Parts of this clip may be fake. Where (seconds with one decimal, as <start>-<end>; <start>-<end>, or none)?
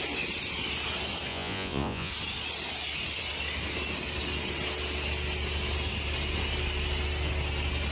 1.3-2.1